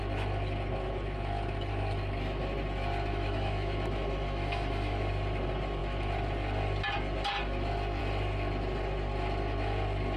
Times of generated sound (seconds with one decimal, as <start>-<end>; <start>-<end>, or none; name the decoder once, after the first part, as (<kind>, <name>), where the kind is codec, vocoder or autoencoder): 3.1-5.1 (autoencoder, DAC-VAE)